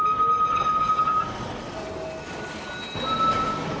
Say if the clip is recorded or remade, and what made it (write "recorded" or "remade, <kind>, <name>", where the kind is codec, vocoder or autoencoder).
recorded